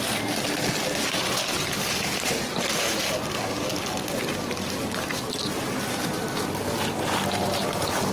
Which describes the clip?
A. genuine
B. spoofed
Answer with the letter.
A